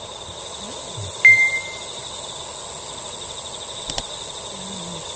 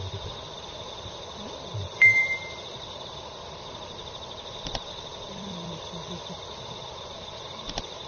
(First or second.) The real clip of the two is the first